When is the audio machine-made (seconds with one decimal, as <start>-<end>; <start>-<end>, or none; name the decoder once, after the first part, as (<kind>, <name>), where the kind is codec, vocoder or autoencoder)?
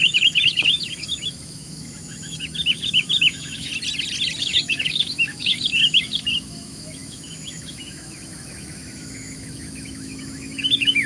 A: 0.0-3.7 (autoencoder, DAC-VAE); 4.4-11.1